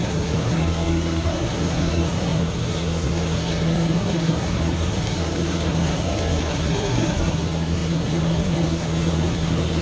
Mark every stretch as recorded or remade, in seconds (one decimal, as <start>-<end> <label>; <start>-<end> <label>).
0.0-9.8 remade